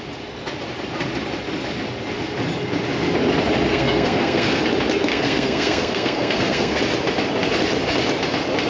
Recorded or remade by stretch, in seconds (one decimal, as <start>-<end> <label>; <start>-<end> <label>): 0.0-3.7 recorded; 3.7-4.6 remade; 4.6-5.1 recorded; 5.1-6.8 remade; 6.8-8.7 recorded